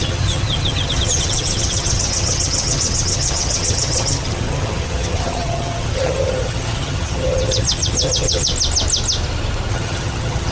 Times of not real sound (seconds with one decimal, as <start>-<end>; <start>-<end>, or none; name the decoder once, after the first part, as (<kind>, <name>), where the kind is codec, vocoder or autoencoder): 0.0-8.5 (vocoder, HiFi-GAN); 9.7-10.5